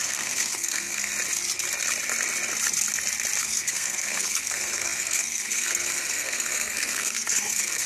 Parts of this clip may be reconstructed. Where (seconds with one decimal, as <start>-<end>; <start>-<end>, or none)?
0.0-1.1; 3.4-7.9